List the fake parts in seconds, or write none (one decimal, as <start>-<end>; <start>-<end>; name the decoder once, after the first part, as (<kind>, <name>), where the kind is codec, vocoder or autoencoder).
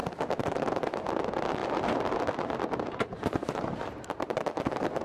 0.0-1.1 (vocoder, BigVGAN v2); 1.6-4.6